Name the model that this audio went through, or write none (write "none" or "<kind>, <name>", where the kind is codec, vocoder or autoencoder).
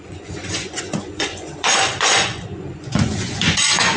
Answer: vocoder, Vocos